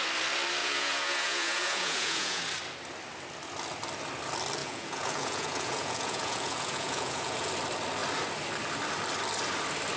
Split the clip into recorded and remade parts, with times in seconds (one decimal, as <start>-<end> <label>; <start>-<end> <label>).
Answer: 0.0-0.6 recorded; 0.6-2.4 remade; 2.4-4.6 recorded; 4.6-7.5 remade; 7.5-10.0 recorded